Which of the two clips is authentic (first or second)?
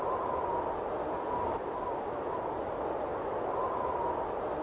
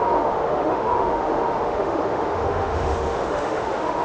first